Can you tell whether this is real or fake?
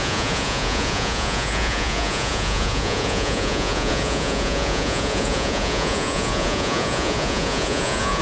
fake